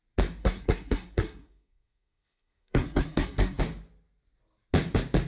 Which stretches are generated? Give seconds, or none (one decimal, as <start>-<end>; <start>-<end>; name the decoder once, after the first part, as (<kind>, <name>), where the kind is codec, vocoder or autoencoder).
0.4-3.6 (codec, SNAC)